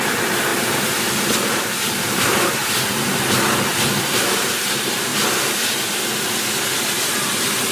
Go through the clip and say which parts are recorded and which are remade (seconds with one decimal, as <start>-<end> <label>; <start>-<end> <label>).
0.0-0.5 remade; 0.5-1.4 recorded; 1.4-2.6 remade; 2.6-4.1 recorded; 4.1-5.1 remade; 5.1-6.8 recorded; 6.8-7.7 remade